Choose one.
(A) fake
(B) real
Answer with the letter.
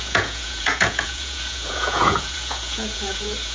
A